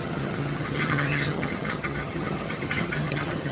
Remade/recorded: remade